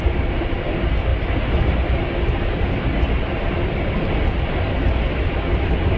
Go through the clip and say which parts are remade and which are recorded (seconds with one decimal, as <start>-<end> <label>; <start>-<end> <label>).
0.0-6.0 recorded